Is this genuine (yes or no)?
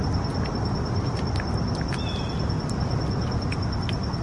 yes